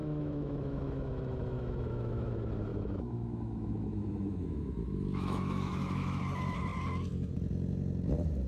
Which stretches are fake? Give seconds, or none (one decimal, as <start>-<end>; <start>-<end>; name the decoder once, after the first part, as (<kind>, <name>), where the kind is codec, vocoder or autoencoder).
0.0-2.3 (autoencoder, DAC-VAE); 2.7-6.2